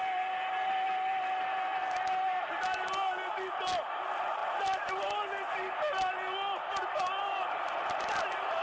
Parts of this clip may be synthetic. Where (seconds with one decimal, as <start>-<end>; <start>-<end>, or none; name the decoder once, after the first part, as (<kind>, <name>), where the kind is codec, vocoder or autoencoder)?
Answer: none